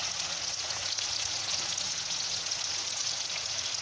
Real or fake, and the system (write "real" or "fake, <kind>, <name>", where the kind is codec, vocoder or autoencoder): fake, vocoder, Vocos